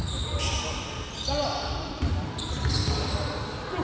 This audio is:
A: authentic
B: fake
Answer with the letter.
A